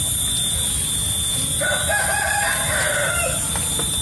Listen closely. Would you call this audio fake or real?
real